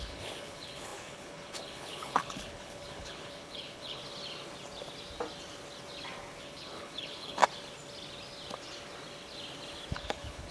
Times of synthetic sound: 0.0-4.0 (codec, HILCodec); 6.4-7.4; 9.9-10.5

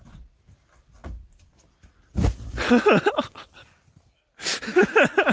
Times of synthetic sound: 1.0-4.2 (vocoder, BigVGAN v2)

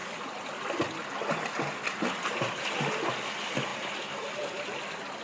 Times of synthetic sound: none

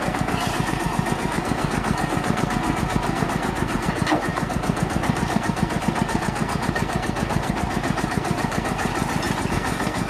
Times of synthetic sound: 0.0-8.9 (codec, SNAC); 9.5-10.1